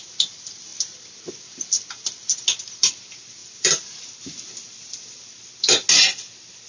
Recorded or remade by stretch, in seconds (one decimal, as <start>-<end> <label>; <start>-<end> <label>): 0.0-3.4 recorded; 3.4-5.0 remade; 5.0-6.7 recorded